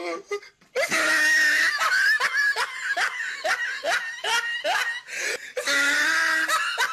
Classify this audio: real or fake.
real